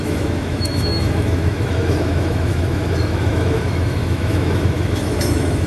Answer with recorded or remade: remade